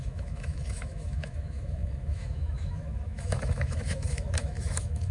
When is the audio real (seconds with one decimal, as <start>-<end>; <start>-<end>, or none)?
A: none

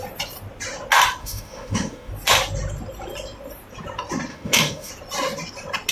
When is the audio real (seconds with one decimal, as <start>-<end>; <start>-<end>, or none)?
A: 0.0-1.2; 2.1-4.3; 4.9-5.9

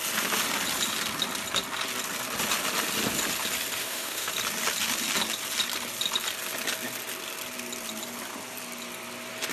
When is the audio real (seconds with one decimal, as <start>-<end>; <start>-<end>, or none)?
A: 0.0-3.8; 4.3-9.5

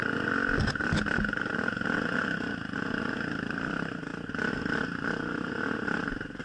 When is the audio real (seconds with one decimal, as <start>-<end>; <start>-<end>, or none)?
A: 0.0-6.4